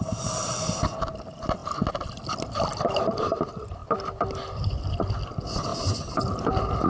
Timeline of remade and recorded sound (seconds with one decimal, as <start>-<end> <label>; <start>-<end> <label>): 0.0-6.9 recorded